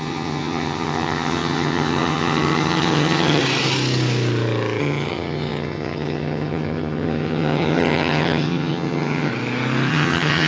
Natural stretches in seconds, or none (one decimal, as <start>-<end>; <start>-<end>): 3.4-4.8; 9.3-9.9